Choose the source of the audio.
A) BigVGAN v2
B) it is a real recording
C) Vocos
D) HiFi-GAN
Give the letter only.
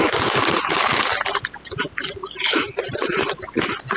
B